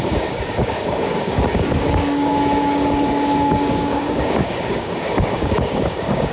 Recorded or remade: remade